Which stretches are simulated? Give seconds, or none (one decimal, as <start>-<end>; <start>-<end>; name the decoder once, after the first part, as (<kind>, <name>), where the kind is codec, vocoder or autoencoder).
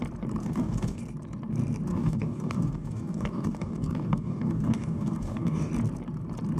0.4-1.0 (codec, DAC); 1.9-5.7